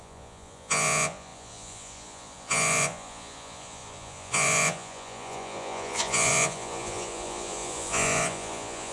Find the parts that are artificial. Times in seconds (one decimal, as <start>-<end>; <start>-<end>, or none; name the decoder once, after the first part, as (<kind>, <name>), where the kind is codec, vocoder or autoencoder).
0.0-8.9 (vocoder, Vocos)